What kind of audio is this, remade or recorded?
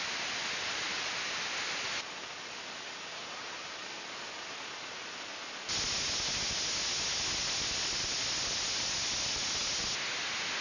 recorded